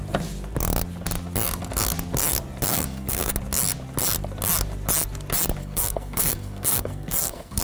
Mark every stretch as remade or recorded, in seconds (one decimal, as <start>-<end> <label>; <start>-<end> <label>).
0.0-2.7 recorded; 2.7-3.3 remade; 3.3-5.6 recorded; 5.6-7.6 remade